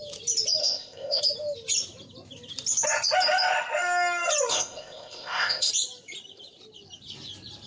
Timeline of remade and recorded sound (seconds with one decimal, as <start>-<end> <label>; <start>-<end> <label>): 0.0-0.6 recorded; 0.6-1.2 remade; 1.2-4.5 recorded; 4.5-5.7 remade; 5.7-7.7 recorded